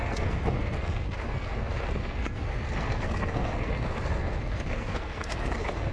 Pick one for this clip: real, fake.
fake